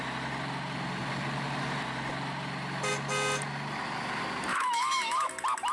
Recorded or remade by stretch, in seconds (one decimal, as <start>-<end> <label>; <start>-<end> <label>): 0.0-4.5 recorded; 4.5-5.3 remade; 5.3-5.7 recorded